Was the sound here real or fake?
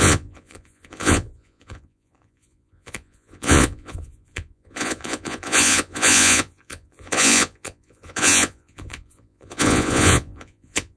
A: fake